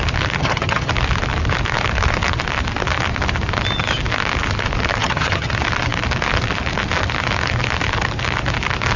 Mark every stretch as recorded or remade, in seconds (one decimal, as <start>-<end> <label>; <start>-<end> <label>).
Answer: 0.0-0.4 recorded; 0.4-0.9 remade; 0.9-5.0 recorded; 5.0-5.5 remade; 5.5-9.0 recorded